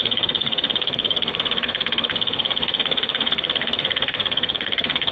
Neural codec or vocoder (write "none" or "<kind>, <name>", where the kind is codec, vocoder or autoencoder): codec, SNAC